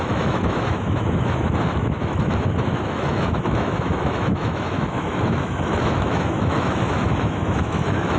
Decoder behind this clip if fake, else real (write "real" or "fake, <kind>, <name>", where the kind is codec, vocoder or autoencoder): fake, autoencoder, DAC-VAE